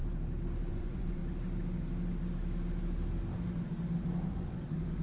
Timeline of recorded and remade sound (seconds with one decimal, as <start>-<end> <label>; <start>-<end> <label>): 0.0-0.7 recorded; 0.7-1.2 remade; 1.2-4.2 recorded; 4.2-5.0 remade